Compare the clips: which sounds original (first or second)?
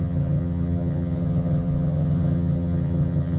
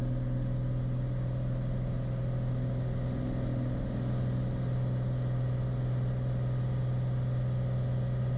second